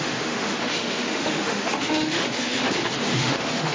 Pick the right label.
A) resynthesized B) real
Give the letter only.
A